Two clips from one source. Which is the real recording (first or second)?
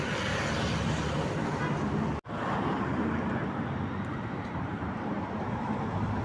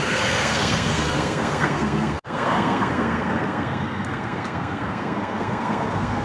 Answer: first